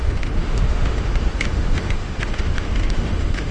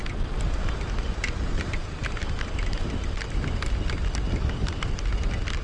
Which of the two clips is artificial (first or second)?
first